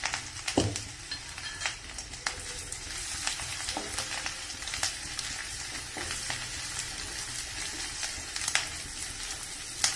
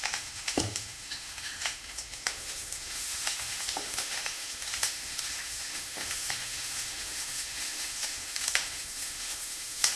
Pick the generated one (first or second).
second